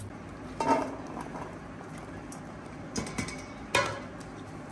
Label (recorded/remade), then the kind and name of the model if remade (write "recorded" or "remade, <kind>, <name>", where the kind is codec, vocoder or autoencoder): recorded